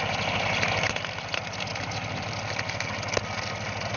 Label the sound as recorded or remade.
recorded